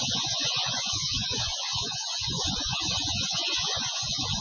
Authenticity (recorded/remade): remade